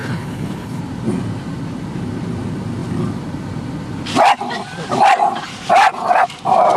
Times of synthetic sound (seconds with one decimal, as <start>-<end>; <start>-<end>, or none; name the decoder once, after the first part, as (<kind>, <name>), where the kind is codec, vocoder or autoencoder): 0.0-0.8 (codec, HILCodec)